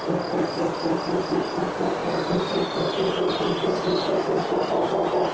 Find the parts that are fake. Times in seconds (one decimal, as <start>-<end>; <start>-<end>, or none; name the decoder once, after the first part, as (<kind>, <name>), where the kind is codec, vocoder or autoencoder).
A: none